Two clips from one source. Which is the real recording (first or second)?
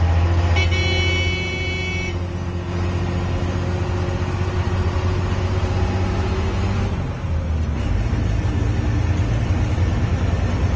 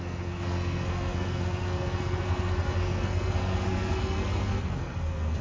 first